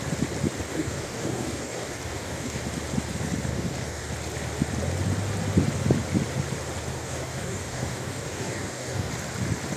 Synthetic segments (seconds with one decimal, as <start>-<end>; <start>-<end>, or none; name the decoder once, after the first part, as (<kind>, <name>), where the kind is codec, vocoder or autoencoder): 0.7-2.6 (codec, DAC); 3.5-4.1; 6.9-9.1